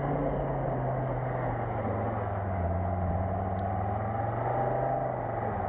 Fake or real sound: real